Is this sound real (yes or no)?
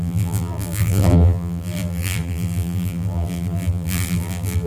no